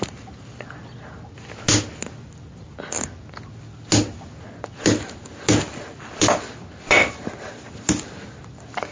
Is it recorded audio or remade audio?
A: recorded